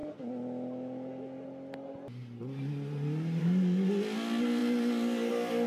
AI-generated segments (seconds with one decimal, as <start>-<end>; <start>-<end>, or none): none